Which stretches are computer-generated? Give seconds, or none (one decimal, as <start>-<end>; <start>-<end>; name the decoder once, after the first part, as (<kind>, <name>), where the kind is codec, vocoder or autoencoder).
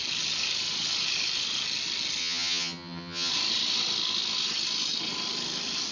2.2-3.3 (vocoder, HiFi-GAN)